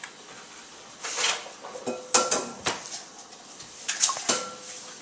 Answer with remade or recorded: recorded